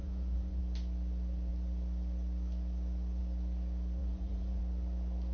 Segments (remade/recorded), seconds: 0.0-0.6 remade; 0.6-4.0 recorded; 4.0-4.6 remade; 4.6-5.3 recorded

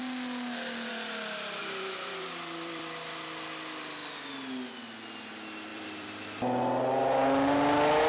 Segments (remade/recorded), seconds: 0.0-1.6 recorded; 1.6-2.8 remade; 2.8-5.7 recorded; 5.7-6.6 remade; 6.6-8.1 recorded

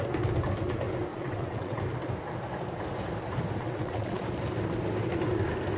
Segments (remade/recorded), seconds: 0.0-1.1 recorded; 1.1-1.8 remade; 1.8-3.6 recorded; 3.6-4.2 remade; 4.2-5.8 recorded

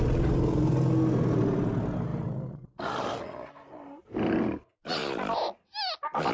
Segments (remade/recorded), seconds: 0.0-2.1 recorded; 2.1-3.1 remade; 3.1-6.3 recorded

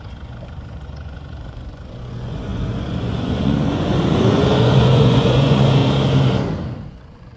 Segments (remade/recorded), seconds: 0.0-5.8 remade; 5.8-6.9 recorded; 6.9-7.4 remade